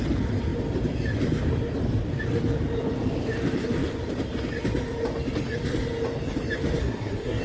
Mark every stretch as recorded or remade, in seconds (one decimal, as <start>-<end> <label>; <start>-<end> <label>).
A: 0.0-6.8 recorded; 6.8-7.4 remade